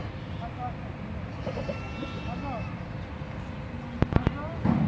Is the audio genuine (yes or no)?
yes